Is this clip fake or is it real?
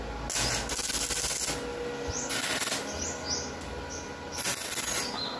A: real